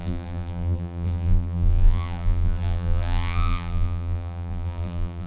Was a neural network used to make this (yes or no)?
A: yes